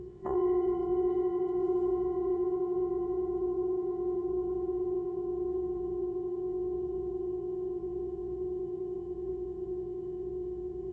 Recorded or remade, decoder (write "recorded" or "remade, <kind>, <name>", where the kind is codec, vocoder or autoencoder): remade, vocoder, WaveNeXt